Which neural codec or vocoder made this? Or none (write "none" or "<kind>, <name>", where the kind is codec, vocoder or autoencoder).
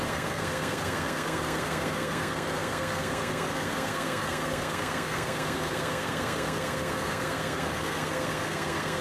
codec, SNAC